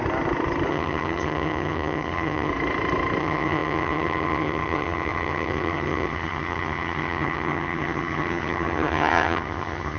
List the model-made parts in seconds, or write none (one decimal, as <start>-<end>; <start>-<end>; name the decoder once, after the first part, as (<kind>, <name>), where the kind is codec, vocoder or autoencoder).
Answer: 0.7-2.5 (vocoder, HiFi-GAN); 3.2-10.0